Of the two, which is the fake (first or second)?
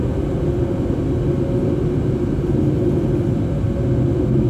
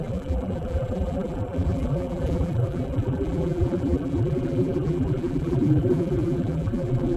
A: second